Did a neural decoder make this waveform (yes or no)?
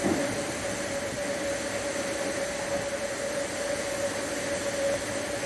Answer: no